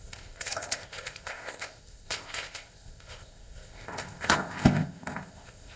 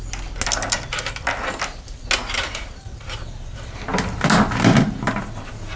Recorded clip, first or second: second